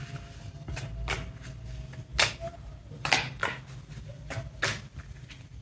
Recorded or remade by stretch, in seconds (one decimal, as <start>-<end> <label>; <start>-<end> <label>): 0.0-5.6 recorded